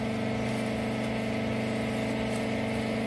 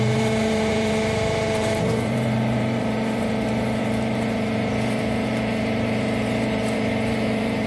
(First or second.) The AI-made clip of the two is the second